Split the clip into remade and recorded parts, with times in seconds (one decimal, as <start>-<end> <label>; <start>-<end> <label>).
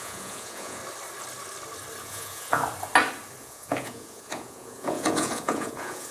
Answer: 0.0-0.8 remade; 0.8-2.0 recorded; 2.0-2.6 remade; 2.6-3.4 recorded; 3.4-6.1 remade